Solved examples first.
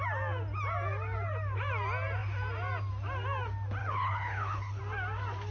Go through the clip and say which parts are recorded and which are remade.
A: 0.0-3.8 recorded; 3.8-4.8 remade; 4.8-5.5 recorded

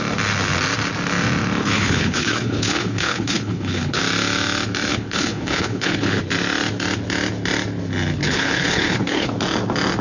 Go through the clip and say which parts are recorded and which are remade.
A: 0.0-1.6 recorded; 1.6-4.0 remade; 4.0-4.9 recorded; 4.9-6.2 remade; 6.2-8.2 recorded; 8.2-9.3 remade; 9.3-10.0 recorded

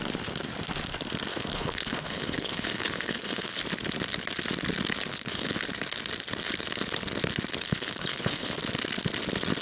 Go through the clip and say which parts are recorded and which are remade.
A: 0.0-1.3 recorded; 1.3-3.6 remade; 3.6-5.1 recorded; 5.1-5.6 remade; 5.6-7.6 recorded; 7.6-8.6 remade; 8.6-9.6 recorded

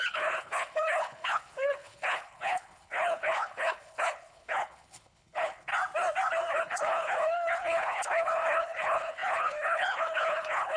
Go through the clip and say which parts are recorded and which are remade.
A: 0.0-5.7 remade; 5.7-6.6 recorded; 6.6-10.8 remade

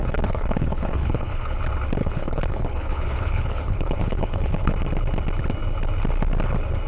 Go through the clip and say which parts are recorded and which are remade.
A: 0.0-1.6 remade; 1.6-2.0 recorded; 2.0-4.7 remade; 4.7-6.9 recorded

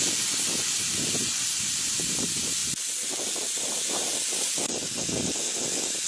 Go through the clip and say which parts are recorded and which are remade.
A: 0.0-6.1 recorded

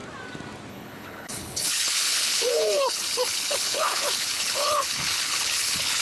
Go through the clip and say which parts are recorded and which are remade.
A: 0.0-0.7 recorded; 0.7-6.0 remade

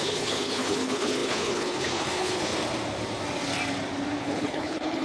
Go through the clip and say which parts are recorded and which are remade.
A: 0.0-2.5 remade; 2.5-4.2 recorded; 4.2-5.0 remade